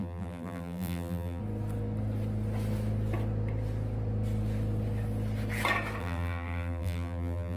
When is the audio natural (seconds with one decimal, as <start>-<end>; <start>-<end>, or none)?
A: 1.4-6.0